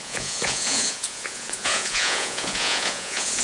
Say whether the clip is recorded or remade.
remade